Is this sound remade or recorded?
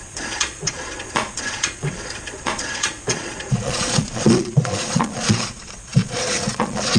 remade